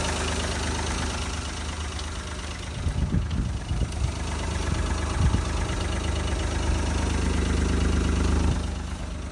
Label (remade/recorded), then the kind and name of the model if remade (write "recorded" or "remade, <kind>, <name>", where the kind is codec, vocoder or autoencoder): recorded